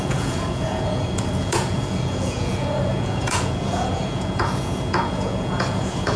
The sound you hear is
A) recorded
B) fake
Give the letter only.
B